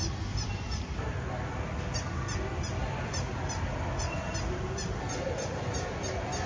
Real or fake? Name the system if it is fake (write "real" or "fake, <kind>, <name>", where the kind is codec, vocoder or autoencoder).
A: fake, vocoder, BigVGAN v2